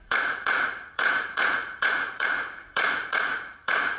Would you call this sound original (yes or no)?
no